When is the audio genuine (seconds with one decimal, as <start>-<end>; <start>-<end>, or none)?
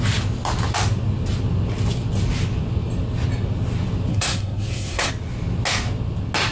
0.0-4.1; 5.1-6.5